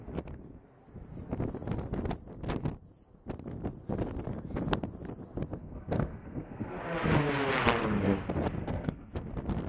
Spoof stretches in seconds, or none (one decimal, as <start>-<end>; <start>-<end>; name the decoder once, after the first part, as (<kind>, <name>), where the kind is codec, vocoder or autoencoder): 5.6-6.8 (codec, SNAC); 8.6-9.1